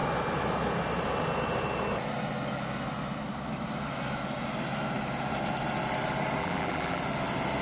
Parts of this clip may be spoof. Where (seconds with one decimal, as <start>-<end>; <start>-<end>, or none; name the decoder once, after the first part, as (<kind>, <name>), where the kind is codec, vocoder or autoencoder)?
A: 6.4-7.0 (vocoder, BigVGAN v2)